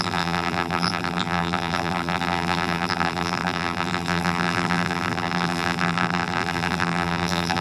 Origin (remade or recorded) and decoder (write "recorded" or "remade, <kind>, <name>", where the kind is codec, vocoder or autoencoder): remade, vocoder, BigVGAN v2